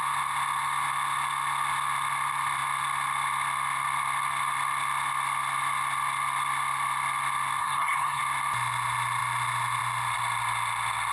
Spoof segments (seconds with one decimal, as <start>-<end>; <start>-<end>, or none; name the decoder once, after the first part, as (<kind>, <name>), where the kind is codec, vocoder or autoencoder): 7.6-8.2 (codec, SNAC)